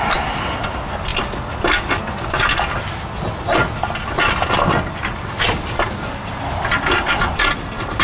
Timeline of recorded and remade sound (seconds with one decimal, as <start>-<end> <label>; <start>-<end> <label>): 0.0-8.0 recorded